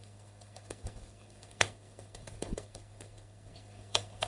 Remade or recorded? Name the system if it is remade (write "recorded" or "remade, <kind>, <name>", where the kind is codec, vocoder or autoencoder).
remade, codec, SNAC